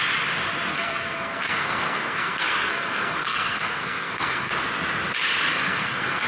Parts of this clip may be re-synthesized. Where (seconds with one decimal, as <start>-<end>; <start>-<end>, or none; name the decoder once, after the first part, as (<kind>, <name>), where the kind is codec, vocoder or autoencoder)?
0.7-4.5 (codec, SNAC); 5.5-6.3